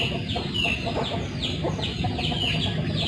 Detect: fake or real real